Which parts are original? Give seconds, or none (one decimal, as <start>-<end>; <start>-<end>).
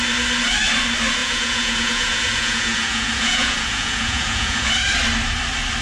0.0-1.2; 4.7-5.8